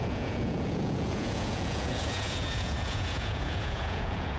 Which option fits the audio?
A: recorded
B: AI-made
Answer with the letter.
B